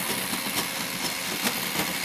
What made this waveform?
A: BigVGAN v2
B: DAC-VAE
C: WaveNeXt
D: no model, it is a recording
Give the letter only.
D